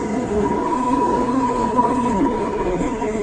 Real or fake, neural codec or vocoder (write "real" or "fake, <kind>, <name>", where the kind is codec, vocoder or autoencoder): fake, codec, SNAC